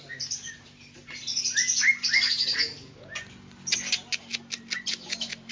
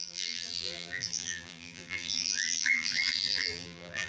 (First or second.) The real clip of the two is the first